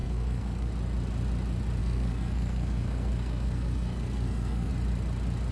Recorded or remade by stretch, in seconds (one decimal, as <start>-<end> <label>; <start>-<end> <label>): 0.0-0.7 remade; 0.7-1.8 recorded; 1.8-4.7 remade; 4.7-5.5 recorded